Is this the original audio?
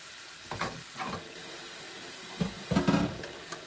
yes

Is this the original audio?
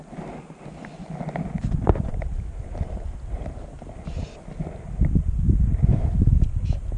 yes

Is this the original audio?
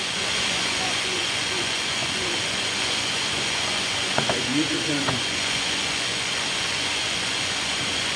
no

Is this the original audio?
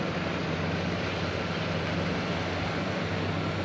yes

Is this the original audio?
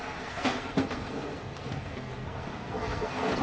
no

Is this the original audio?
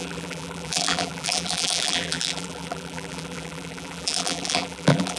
no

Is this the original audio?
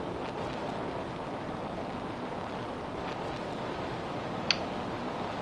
yes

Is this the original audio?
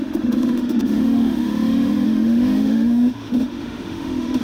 no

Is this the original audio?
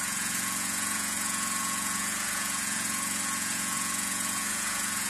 no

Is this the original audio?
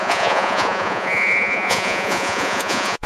no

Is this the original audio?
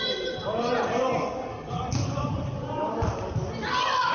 yes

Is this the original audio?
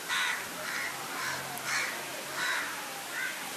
yes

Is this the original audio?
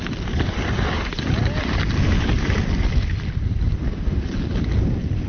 yes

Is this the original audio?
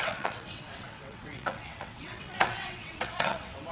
no